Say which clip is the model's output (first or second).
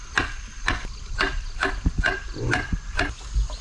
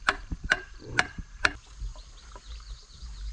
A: second